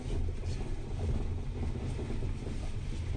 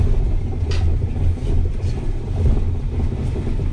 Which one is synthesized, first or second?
second